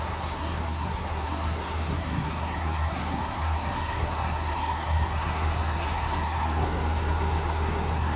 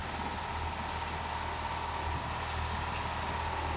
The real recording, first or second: second